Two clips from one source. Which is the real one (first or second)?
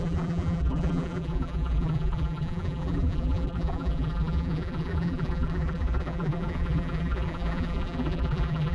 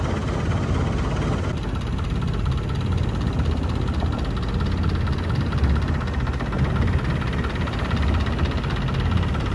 second